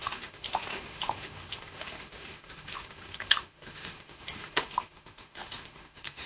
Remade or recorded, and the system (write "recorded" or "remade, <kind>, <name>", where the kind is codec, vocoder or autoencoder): remade, autoencoder, DAC-VAE